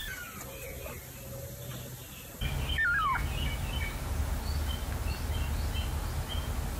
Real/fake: real